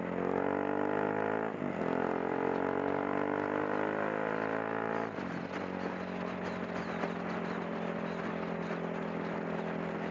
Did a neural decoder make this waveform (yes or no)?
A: no